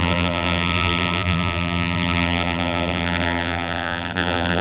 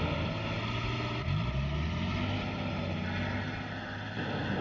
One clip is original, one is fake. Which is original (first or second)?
second